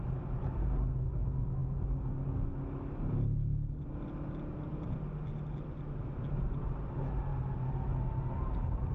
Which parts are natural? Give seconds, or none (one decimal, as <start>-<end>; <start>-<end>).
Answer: 0.0-8.9